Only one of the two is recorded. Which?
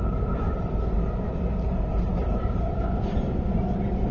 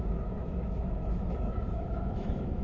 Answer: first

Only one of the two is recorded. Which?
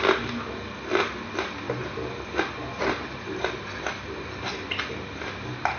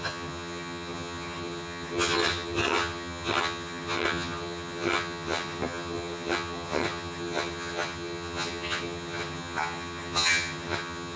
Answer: first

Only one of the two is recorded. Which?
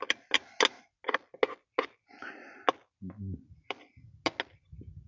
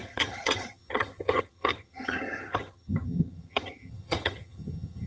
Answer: first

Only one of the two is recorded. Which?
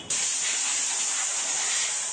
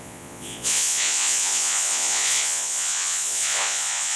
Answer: first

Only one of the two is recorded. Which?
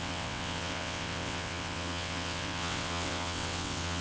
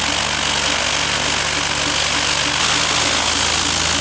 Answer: second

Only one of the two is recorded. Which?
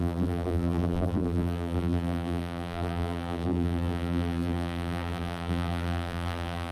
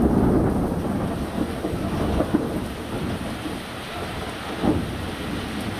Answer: second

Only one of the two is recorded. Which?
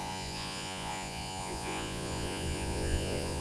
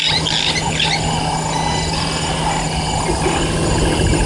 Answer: second